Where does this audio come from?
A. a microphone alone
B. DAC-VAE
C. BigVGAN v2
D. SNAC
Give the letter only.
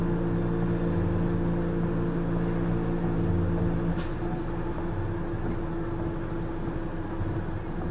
A